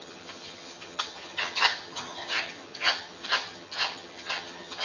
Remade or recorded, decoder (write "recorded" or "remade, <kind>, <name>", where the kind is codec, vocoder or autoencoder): remade, vocoder, HiFi-GAN